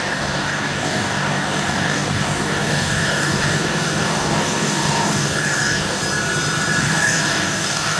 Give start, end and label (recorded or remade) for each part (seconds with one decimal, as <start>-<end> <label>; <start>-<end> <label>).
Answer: 0.0-6.0 remade; 6.0-6.8 recorded; 6.8-8.0 remade